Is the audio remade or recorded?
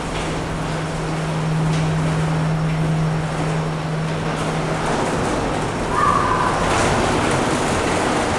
recorded